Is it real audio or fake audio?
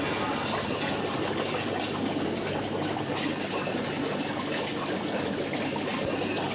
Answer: real